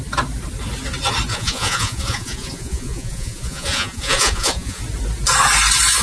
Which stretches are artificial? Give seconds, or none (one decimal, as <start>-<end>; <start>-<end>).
1.3-4.8

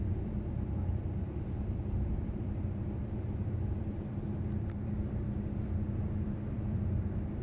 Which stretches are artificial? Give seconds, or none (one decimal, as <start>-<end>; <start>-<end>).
0.0-7.4